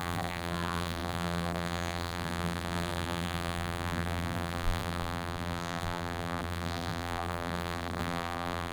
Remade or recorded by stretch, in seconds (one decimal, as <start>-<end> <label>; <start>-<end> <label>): 0.0-8.7 remade